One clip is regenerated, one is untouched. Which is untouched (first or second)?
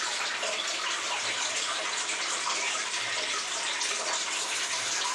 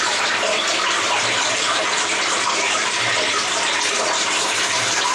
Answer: first